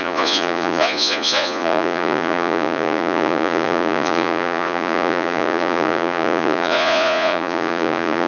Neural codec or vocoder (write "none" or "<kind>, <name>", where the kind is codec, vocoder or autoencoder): vocoder, Vocos